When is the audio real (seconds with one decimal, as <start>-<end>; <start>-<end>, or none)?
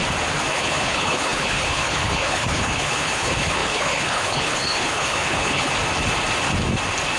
0.0-0.5; 5.7-7.2